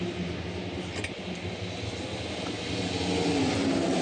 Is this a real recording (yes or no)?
yes